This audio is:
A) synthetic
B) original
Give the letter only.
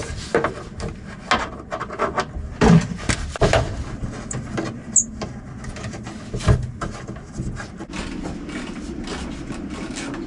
B